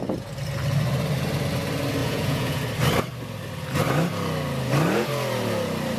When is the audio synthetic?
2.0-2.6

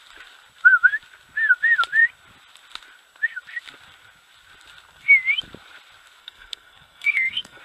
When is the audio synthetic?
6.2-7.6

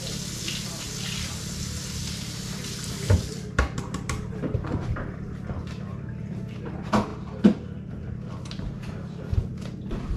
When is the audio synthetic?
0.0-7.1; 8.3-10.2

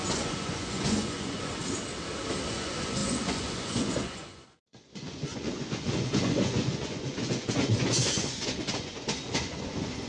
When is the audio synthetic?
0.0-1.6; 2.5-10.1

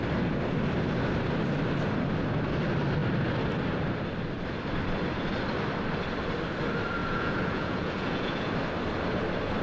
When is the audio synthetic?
7.0-8.5

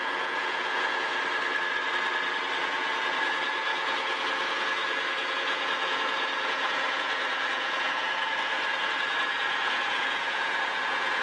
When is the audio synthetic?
0.0-1.1; 2.6-11.2

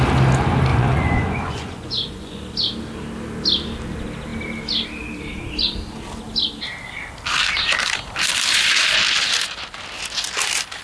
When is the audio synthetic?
0.7-2.4